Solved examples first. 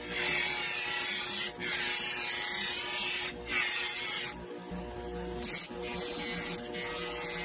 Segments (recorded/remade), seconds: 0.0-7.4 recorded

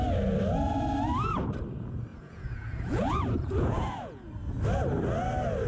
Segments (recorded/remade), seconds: 0.0-2.1 recorded; 2.1-4.3 remade; 4.3-5.7 recorded

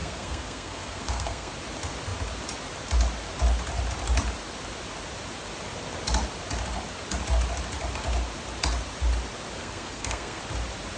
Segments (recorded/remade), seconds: 0.0-1.5 remade; 1.5-9.6 recorded; 9.6-10.4 remade; 10.4-11.0 recorded

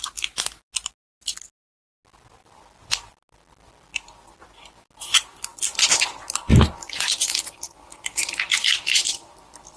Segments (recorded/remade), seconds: 0.0-9.8 recorded

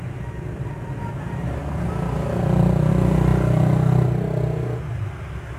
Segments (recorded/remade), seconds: 0.0-5.6 recorded